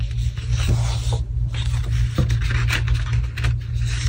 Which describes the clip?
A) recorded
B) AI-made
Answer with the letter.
A